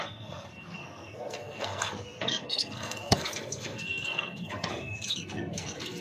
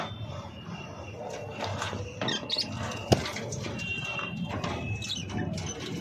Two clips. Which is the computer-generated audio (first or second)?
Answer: first